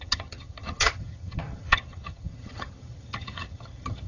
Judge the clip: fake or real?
fake